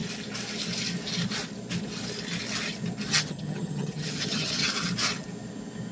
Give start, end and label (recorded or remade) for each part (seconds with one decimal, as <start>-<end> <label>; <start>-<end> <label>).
0.0-3.1 recorded; 3.1-4.7 remade; 4.7-5.9 recorded